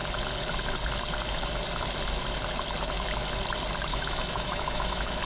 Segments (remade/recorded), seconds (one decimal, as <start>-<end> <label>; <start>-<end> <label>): 0.0-3.9 recorded; 3.9-5.2 remade